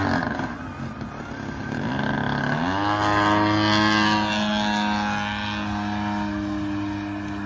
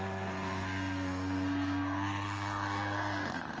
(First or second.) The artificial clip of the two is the second